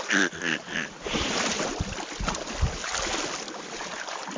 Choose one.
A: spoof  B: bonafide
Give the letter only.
B